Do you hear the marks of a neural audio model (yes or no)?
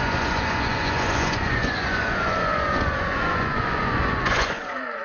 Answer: yes